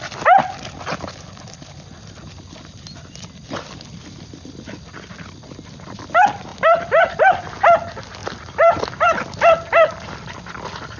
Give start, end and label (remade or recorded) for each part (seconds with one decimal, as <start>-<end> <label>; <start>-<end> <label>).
0.0-8.2 recorded; 8.2-8.8 remade; 8.8-11.0 recorded